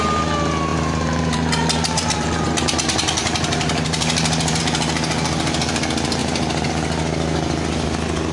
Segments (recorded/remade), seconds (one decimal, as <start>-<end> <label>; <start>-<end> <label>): 0.0-0.7 recorded; 0.7-4.6 remade; 4.6-6.2 recorded; 6.2-6.7 remade; 6.7-8.3 recorded